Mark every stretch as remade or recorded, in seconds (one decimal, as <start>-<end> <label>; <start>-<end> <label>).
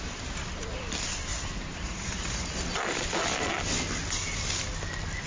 0.0-1.3 recorded; 1.3-2.5 remade; 2.5-5.3 recorded